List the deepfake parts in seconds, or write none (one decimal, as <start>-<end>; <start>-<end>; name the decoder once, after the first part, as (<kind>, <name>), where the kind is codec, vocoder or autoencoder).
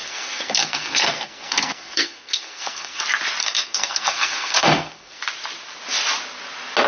0.0-3.0 (codec, SNAC); 3.4-5.2